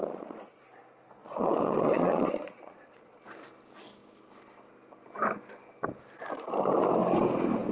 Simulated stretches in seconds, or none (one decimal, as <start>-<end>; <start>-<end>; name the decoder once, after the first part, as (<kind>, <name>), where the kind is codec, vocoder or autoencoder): 0.0-0.6 (vocoder, Vocos); 1.2-3.2